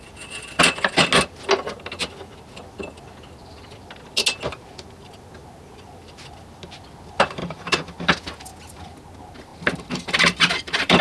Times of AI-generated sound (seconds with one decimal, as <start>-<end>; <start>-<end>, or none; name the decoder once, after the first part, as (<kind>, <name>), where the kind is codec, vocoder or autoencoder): none